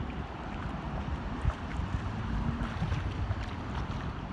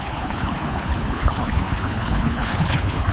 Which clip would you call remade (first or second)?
second